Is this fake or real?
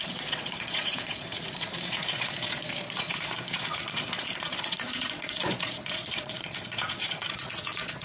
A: fake